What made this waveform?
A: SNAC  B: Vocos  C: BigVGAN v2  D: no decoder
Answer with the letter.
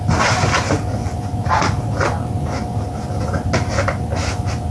D